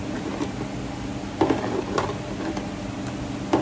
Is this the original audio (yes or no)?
yes